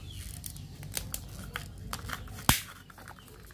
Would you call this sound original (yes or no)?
yes